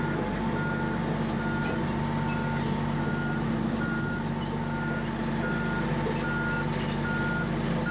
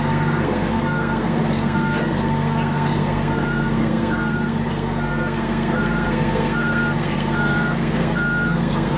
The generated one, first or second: second